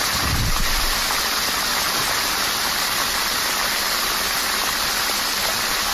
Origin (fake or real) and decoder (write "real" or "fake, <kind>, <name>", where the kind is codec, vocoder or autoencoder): real